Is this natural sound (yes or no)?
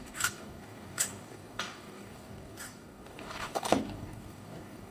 no